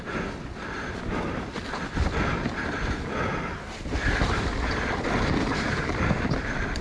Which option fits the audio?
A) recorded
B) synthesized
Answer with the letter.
B